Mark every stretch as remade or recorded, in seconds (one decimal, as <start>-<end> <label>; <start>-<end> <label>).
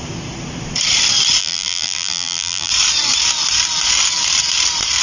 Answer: 0.0-1.4 recorded; 1.4-2.7 remade; 2.7-5.0 recorded